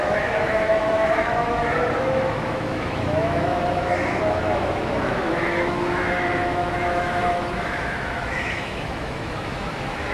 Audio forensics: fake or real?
fake